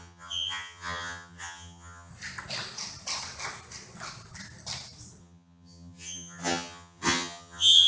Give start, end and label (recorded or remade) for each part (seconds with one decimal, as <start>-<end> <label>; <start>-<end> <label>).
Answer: 0.0-2.1 remade; 2.1-5.2 recorded; 5.2-7.9 remade